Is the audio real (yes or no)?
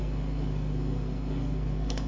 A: no